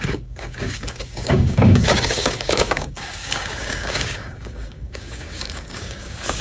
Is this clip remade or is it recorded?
remade